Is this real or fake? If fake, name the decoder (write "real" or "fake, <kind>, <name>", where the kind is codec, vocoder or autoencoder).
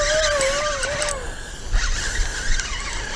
real